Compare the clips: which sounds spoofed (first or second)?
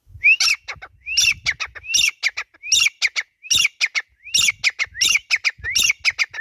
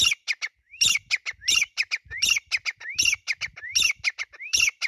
second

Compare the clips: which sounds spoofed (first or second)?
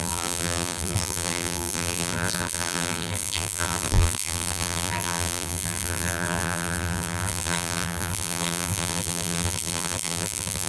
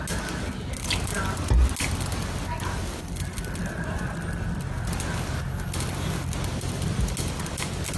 first